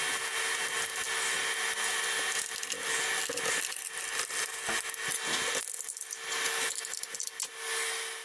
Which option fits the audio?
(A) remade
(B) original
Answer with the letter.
B